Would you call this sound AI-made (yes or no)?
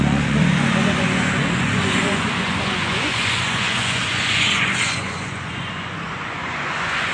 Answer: yes